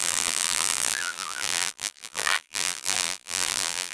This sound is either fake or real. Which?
fake